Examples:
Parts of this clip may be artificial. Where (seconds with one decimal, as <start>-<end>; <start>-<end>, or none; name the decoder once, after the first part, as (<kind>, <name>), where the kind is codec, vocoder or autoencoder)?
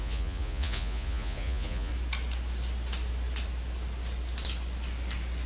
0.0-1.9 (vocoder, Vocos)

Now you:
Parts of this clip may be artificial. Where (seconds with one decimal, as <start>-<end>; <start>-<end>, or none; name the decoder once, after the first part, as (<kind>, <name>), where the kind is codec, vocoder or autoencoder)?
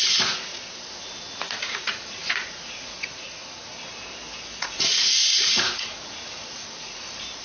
0.0-0.5 (vocoder, Vocos); 1.0-3.4; 4.6-7.4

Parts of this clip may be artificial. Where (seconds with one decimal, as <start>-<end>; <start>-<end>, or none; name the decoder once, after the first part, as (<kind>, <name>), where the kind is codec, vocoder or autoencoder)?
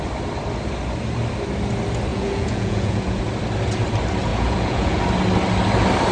2.1-3.2 (vocoder, Vocos); 4.3-5.0